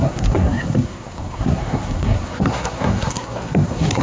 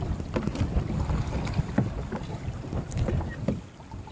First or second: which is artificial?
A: first